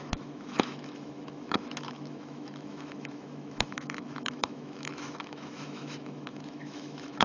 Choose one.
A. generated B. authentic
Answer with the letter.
A